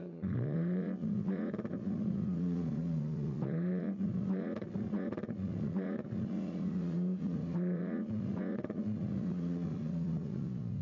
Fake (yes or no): yes